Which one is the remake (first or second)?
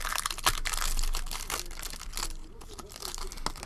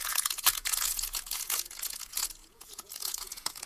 second